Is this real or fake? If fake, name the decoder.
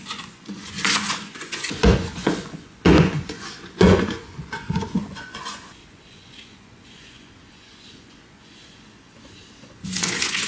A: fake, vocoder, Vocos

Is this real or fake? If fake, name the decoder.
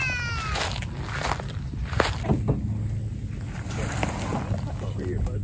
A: real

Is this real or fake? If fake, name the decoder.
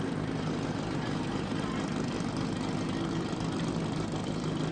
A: real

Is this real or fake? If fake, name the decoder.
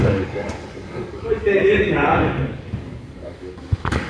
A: fake, codec, DAC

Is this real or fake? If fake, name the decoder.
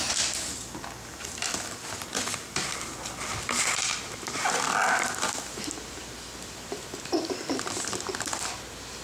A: real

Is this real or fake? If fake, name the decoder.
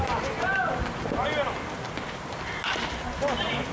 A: real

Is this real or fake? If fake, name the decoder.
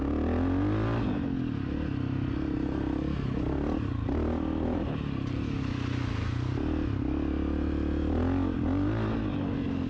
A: real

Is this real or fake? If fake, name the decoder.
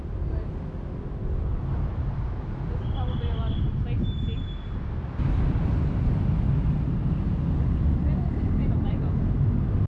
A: real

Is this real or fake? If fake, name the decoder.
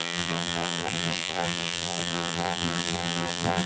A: fake, vocoder, BigVGAN v2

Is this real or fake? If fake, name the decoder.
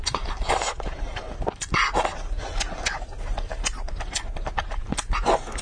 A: real